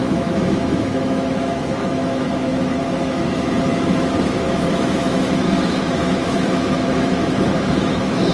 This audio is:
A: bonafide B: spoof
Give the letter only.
B